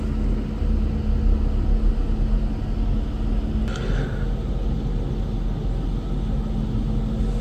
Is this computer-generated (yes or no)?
no